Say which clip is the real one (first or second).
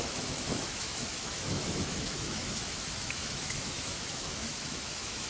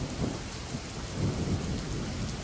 second